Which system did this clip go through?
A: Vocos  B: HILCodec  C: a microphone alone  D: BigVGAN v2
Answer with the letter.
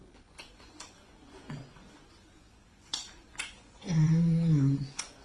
A